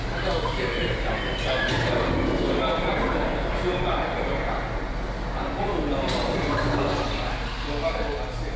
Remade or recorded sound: recorded